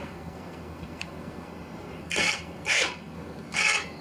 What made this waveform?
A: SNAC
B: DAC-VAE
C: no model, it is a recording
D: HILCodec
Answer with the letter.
A